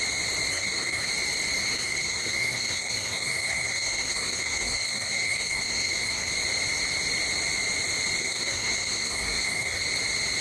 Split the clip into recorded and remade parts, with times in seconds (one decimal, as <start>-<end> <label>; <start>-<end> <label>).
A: 0.0-0.5 recorded; 0.5-1.1 remade; 1.1-1.7 recorded; 1.7-6.3 remade; 6.3-8.2 recorded; 8.2-9.8 remade; 9.8-10.4 recorded